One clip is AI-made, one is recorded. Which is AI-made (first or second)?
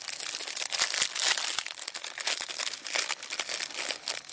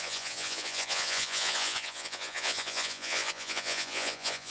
second